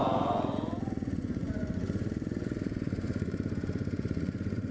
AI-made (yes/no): yes